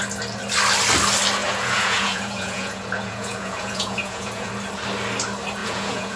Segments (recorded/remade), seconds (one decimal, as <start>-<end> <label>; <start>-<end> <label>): 0.0-1.4 recorded; 1.4-4.5 remade; 4.5-5.6 recorded; 5.6-6.2 remade